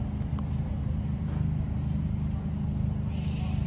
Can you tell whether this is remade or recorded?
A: recorded